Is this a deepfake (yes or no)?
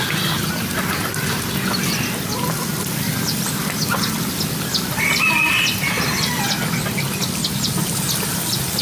no